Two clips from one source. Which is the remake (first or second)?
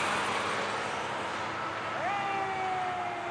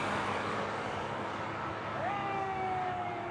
second